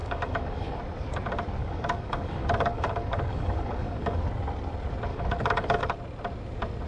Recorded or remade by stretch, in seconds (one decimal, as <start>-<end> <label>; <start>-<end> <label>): 0.0-0.8 remade; 0.8-1.6 recorded; 1.6-4.2 remade; 4.2-5.1 recorded; 5.1-5.8 remade; 5.8-6.9 recorded